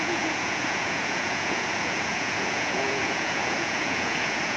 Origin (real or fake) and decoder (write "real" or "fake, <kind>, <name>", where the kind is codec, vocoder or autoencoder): fake, vocoder, Vocos